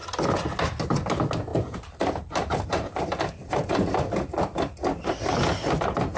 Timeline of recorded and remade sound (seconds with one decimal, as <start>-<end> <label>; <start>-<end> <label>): 0.0-1.5 recorded; 1.5-5.2 remade; 5.2-6.2 recorded